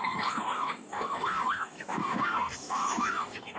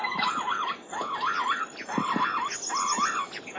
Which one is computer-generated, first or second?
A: first